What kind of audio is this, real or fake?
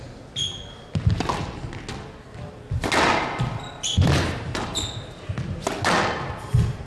real